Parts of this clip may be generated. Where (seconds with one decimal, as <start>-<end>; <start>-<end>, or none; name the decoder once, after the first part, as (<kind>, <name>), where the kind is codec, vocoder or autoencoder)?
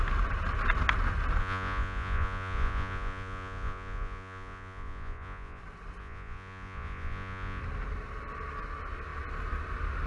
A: 1.4-5.6 (vocoder, Vocos); 6.0-7.6